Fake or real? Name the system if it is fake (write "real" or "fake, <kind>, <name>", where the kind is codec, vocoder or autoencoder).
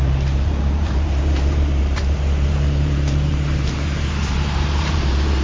fake, vocoder, BigVGAN v2